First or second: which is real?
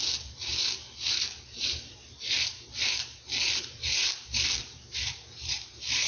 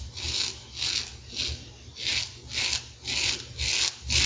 second